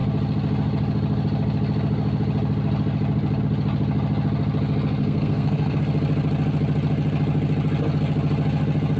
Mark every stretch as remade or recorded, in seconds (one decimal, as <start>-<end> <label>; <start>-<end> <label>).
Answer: 0.0-5.0 recorded; 5.0-5.8 remade; 5.8-9.0 recorded